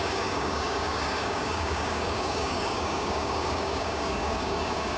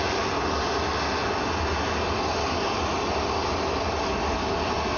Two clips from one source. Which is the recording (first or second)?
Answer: second